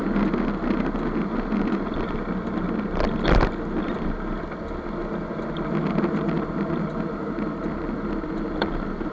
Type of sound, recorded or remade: recorded